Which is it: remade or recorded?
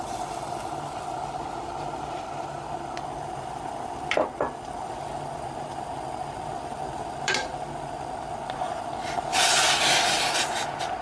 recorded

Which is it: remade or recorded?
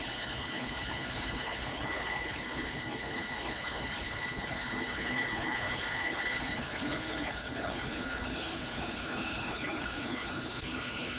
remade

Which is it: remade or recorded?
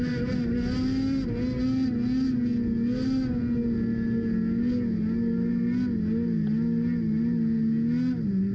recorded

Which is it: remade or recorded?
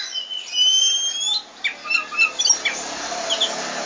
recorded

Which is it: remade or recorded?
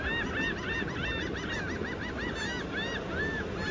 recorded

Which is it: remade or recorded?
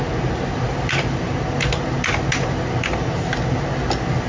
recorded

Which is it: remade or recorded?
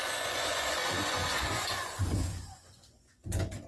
remade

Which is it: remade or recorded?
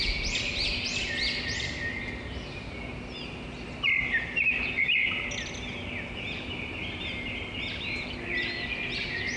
recorded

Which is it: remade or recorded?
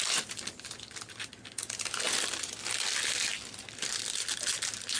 recorded